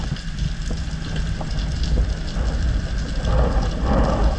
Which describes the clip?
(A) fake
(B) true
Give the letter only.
B